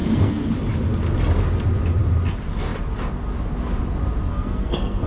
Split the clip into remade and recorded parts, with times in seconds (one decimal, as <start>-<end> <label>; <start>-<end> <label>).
0.0-0.5 remade; 0.5-4.3 recorded; 4.3-5.1 remade